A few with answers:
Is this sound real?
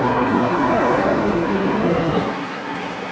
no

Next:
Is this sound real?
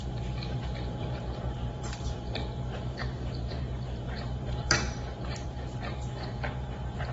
no